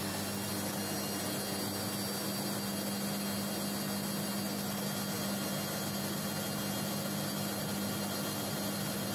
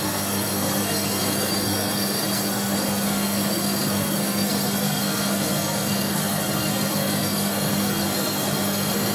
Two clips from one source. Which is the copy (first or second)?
second